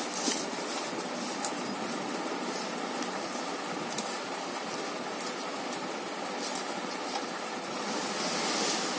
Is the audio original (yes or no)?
yes